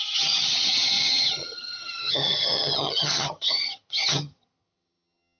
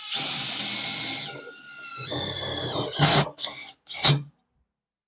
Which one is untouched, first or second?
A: second